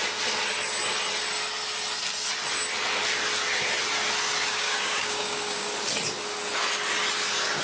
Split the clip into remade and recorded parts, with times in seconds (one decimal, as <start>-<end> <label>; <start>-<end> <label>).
0.0-4.5 recorded; 4.5-5.7 remade; 5.7-7.6 recorded